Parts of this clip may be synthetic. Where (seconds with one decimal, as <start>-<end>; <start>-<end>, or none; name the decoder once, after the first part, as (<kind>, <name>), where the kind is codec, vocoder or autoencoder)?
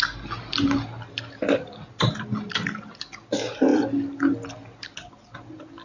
none